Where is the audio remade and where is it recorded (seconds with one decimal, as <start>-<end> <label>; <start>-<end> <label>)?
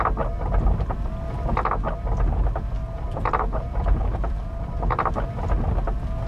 0.0-2.8 recorded; 2.8-5.1 remade; 5.1-6.3 recorded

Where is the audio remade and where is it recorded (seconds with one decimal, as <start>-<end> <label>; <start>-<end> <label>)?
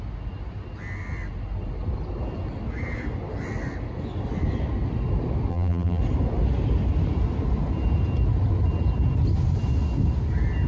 0.0-5.5 recorded; 5.5-6.0 remade; 6.0-10.7 recorded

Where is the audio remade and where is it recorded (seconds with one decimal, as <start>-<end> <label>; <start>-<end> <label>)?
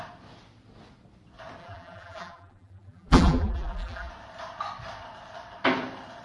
0.0-1.6 recorded; 1.6-4.1 remade; 4.1-6.2 recorded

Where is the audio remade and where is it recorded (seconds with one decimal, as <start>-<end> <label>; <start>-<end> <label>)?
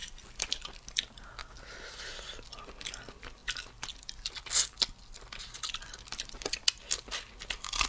0.0-7.9 recorded